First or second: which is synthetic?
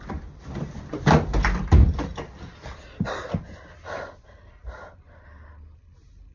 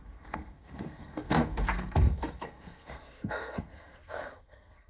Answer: second